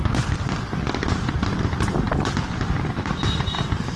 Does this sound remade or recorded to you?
recorded